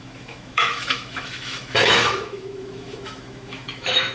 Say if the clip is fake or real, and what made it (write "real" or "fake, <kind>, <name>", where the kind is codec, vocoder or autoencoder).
fake, autoencoder, DAC-VAE